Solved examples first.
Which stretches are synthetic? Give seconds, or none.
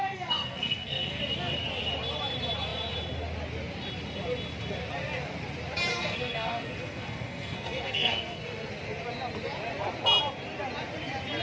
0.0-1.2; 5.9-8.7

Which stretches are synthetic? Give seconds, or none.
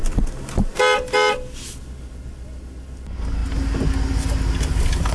none